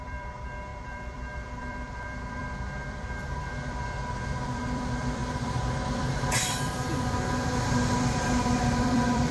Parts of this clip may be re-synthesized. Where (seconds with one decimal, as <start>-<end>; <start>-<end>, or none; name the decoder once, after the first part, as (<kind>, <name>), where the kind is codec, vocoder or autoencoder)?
0.0-9.3 (vocoder, BigVGAN v2)